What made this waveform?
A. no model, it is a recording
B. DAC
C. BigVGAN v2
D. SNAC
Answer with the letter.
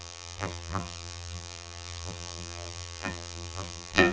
C